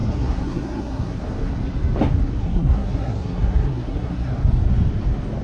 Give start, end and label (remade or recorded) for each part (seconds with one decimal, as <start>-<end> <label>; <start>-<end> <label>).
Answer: 0.0-1.2 remade; 1.2-2.4 recorded; 2.4-4.3 remade; 4.3-5.4 recorded